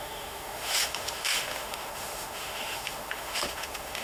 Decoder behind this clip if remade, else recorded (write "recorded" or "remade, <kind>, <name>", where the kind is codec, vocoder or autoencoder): remade, autoencoder, DAC-VAE